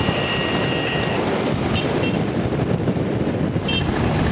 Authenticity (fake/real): real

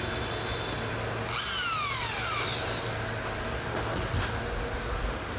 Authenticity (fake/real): real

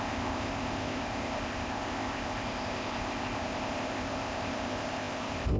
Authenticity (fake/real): fake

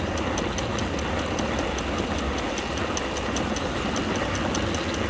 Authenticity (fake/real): real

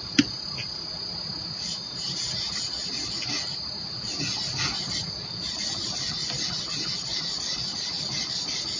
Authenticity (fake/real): real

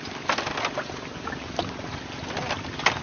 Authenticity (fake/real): real